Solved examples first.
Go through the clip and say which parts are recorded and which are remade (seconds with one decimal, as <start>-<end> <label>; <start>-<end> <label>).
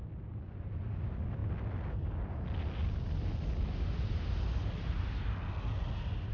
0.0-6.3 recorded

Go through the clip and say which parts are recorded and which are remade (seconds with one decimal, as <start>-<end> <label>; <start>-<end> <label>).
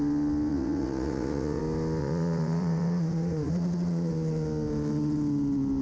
0.0-0.5 recorded; 0.5-1.6 remade; 1.6-2.0 recorded; 2.0-4.1 remade; 4.1-5.8 recorded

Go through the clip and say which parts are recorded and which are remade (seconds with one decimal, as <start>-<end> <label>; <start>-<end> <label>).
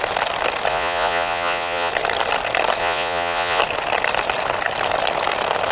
0.0-0.7 recorded; 0.7-1.9 remade; 1.9-2.8 recorded; 2.8-3.6 remade; 3.6-5.7 recorded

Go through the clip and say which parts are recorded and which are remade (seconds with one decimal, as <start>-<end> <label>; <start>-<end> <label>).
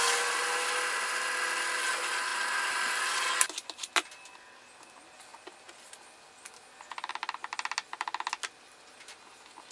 0.0-9.7 recorded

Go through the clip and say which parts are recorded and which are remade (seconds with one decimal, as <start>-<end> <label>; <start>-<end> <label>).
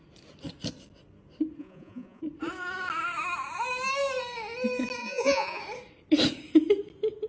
0.0-1.6 recorded; 1.6-2.2 remade; 2.2-5.0 recorded; 5.0-5.6 remade; 5.6-7.3 recorded